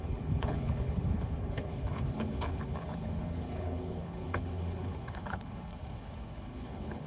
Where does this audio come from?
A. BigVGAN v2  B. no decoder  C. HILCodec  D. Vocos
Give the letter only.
C